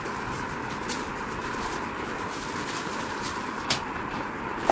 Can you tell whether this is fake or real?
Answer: real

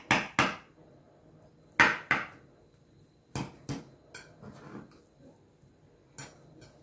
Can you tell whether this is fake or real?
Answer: real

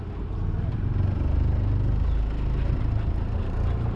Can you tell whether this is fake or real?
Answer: real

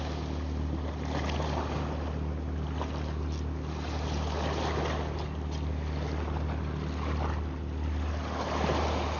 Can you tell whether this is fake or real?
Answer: real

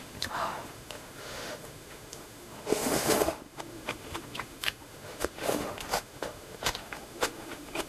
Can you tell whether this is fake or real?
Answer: fake